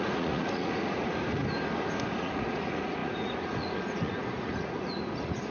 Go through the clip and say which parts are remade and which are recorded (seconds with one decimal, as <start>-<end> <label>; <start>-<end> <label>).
0.0-1.4 remade; 1.4-2.1 recorded; 2.1-5.5 remade